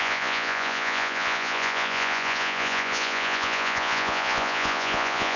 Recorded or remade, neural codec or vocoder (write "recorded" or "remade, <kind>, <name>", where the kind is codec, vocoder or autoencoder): remade, vocoder, Vocos